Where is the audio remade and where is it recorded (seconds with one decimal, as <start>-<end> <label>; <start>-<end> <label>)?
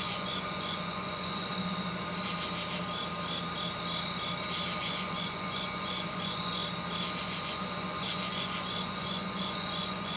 0.0-1.5 remade; 1.5-4.8 recorded; 4.8-6.6 remade; 6.6-7.2 recorded; 7.2-10.2 remade